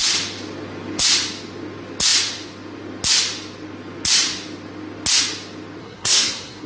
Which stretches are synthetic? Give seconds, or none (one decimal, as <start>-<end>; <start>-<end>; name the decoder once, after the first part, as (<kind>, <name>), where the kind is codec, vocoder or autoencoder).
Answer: 5.8-6.7 (codec, SNAC)